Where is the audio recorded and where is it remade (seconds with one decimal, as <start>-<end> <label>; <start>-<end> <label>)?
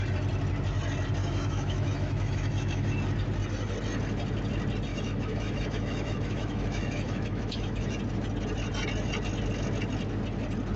0.0-1.2 recorded; 1.2-2.9 remade; 2.9-4.9 recorded; 4.9-8.0 remade; 8.0-10.8 recorded